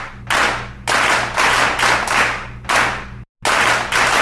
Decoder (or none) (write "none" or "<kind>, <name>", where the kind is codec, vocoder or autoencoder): none